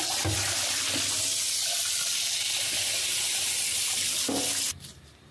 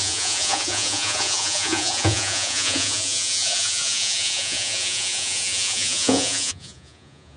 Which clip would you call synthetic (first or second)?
second